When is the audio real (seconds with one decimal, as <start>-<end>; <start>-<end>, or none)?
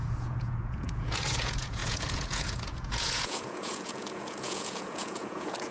none